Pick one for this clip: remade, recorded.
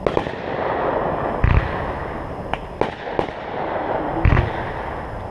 recorded